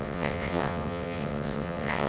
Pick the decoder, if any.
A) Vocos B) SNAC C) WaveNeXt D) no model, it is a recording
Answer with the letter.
C